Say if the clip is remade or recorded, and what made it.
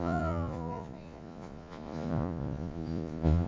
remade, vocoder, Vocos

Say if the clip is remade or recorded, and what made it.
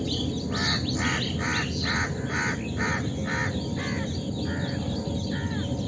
recorded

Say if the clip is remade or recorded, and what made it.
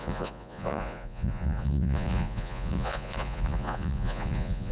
remade, vocoder, Vocos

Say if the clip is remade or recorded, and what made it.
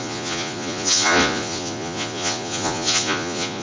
remade, vocoder, Vocos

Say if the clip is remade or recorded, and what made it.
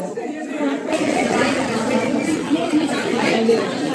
remade, vocoder, Vocos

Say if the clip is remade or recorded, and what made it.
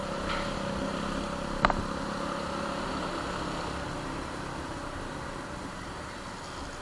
recorded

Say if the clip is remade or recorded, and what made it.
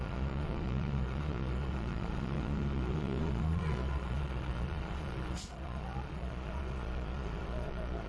remade, vocoder, Vocos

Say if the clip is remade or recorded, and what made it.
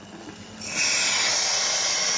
recorded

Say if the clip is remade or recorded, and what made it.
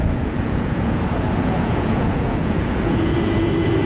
remade, vocoder, Vocos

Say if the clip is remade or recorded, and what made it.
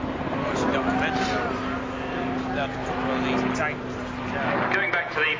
recorded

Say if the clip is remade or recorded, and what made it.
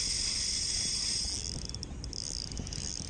recorded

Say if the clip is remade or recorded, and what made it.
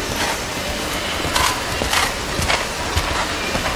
recorded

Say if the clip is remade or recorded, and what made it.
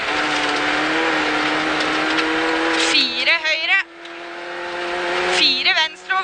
recorded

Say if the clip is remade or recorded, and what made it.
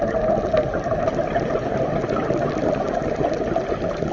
recorded